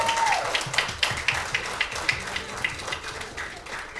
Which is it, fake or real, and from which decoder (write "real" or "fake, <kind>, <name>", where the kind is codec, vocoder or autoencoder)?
real